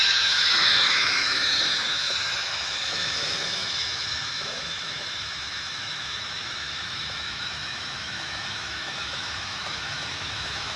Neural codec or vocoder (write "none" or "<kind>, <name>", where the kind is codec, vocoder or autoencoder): autoencoder, DAC-VAE